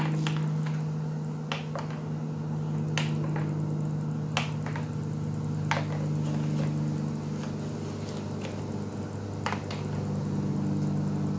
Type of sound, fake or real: real